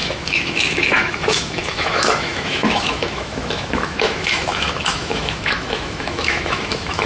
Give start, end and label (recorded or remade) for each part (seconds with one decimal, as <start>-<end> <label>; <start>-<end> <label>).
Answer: 0.0-7.1 remade